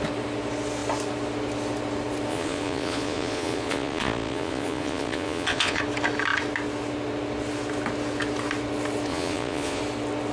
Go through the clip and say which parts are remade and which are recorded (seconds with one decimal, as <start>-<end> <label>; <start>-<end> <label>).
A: 0.0-2.3 recorded; 2.3-5.8 remade; 5.8-9.1 recorded; 9.1-9.8 remade; 9.8-10.3 recorded